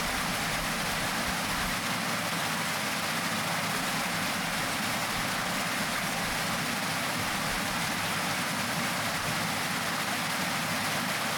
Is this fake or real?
real